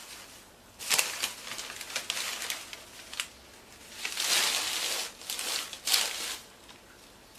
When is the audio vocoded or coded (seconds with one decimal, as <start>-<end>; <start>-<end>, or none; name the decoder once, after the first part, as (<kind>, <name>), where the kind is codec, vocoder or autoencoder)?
none